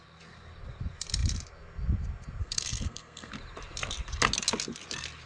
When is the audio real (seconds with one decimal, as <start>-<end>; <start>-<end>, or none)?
0.0-2.4; 3.3-5.3